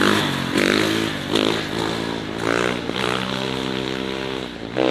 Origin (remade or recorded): recorded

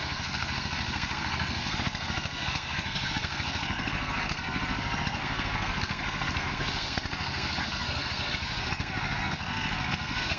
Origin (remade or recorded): remade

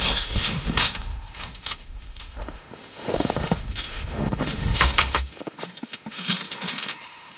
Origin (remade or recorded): remade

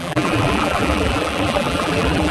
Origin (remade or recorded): remade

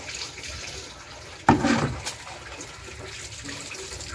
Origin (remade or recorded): recorded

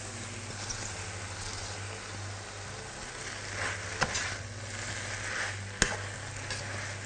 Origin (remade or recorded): recorded